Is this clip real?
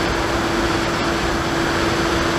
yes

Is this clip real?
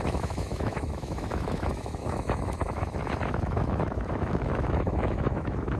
no